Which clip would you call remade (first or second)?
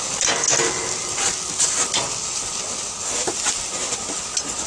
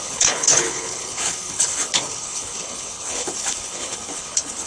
second